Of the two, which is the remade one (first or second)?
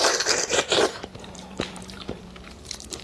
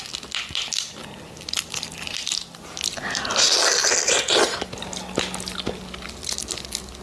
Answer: first